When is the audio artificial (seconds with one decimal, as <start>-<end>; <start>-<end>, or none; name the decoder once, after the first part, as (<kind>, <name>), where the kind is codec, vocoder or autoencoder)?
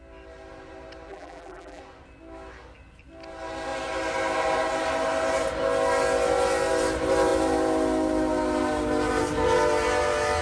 1.1-1.8 (vocoder, BigVGAN v2)